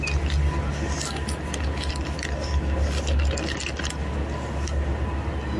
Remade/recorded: recorded